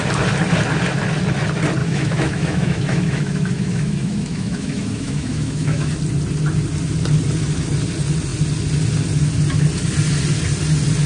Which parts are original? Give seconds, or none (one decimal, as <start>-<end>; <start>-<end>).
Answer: 0.0-1.8; 5.9-11.1

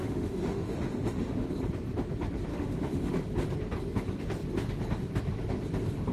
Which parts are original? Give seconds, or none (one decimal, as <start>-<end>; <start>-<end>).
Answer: 1.5-2.5; 3.1-6.1

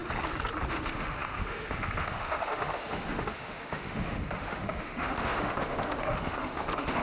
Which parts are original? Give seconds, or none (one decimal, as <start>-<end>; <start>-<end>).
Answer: 0.0-0.7